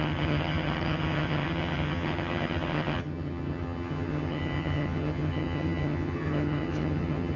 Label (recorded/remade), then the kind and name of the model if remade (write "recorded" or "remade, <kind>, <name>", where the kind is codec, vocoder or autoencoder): remade, vocoder, HiFi-GAN